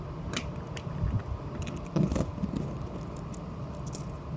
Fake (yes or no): no